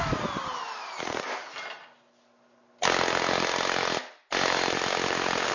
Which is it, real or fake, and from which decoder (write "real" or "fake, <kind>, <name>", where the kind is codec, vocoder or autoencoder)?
real